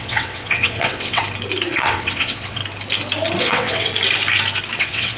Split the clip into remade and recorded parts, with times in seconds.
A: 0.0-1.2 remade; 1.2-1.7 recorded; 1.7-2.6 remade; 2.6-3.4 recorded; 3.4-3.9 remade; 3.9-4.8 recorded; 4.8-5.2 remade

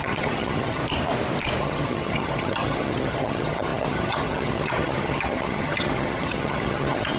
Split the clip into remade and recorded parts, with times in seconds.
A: 0.0-0.8 remade; 0.8-1.6 recorded; 1.6-7.2 remade